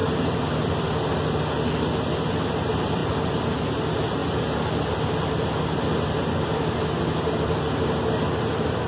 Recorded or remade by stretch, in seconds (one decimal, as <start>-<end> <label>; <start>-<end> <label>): 0.0-8.9 recorded